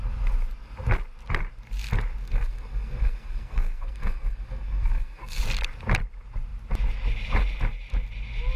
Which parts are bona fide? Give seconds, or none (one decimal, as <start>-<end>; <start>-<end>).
0.0-2.2; 5.4-8.6